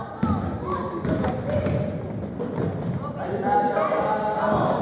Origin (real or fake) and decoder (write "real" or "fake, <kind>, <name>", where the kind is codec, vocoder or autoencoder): real